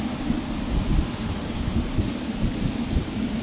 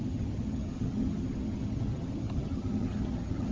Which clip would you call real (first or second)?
first